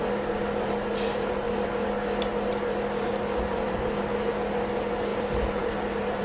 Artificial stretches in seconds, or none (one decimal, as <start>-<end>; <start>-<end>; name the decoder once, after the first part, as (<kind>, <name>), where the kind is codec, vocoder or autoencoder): 0.9-1.5 (vocoder, BigVGAN v2); 3.5-4.3; 5.1-6.2